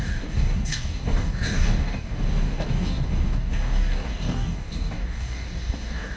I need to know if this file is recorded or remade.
remade